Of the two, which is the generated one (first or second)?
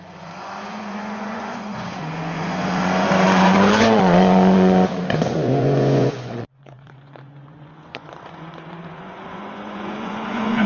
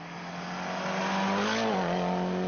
first